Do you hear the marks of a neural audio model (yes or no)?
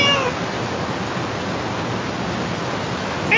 no